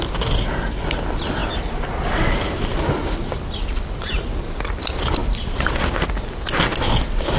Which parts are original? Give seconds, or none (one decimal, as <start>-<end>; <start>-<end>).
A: 0.0-7.4